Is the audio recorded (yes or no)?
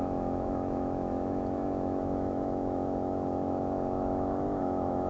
no